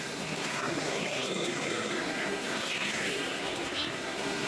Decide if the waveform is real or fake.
fake